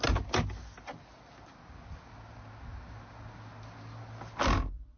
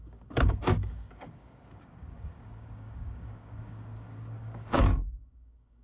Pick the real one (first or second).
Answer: first